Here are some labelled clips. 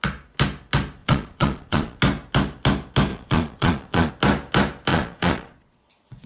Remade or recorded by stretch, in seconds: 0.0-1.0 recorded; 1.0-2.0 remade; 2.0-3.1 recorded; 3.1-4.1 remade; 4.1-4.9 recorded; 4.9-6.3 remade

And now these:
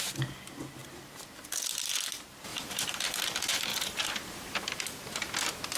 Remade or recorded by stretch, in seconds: 0.0-2.5 recorded; 2.5-3.2 remade; 3.2-3.7 recorded; 3.7-4.8 remade; 4.8-5.8 recorded

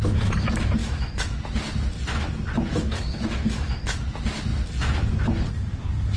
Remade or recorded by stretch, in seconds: 0.0-0.8 recorded; 0.8-1.4 remade; 1.4-2.7 recorded; 2.7-4.0 remade; 4.0-6.2 recorded

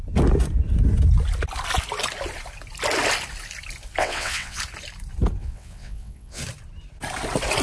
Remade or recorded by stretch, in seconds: 0.0-4.0 recorded; 4.0-4.6 remade; 4.6-5.4 recorded; 5.4-6.4 remade; 6.4-7.6 recorded

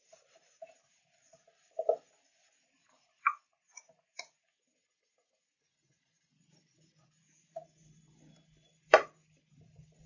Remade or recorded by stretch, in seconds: 0.0-10.1 recorded

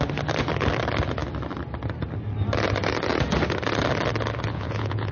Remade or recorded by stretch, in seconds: 0.0-4.5 recorded; 4.5-5.1 remade

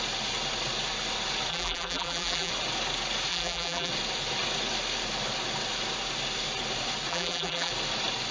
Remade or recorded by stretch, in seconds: 0.0-1.5 recorded; 1.5-2.5 remade; 2.5-3.3 recorded; 3.3-3.9 remade; 3.9-7.1 recorded; 7.1-7.7 remade; 7.7-8.3 recorded